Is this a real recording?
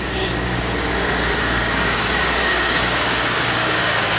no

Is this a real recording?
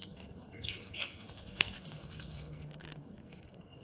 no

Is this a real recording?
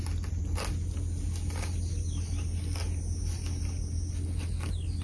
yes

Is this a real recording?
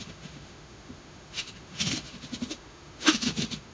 no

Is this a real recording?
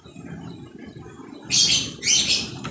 yes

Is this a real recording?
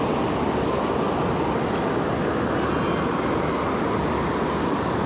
yes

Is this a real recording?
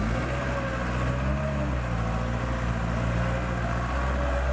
yes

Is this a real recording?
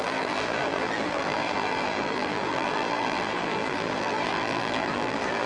no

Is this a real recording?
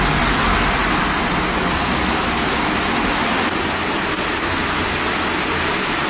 yes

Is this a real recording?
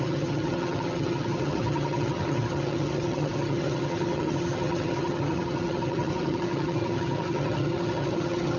no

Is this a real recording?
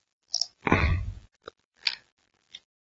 no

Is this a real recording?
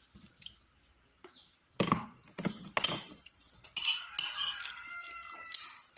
yes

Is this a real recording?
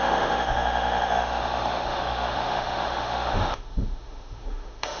no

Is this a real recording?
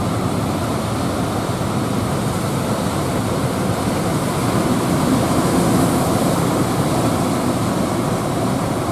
yes